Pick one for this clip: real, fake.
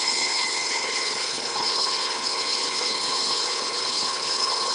fake